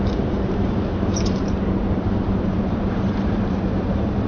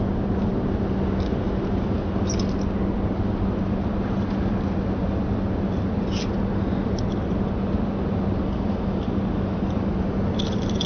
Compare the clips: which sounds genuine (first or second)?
second